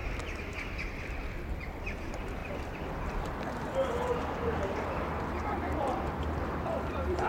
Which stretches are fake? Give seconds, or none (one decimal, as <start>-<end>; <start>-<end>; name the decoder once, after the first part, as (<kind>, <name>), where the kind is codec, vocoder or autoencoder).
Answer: 0.9-2.4 (vocoder, BigVGAN v2); 6.8-7.3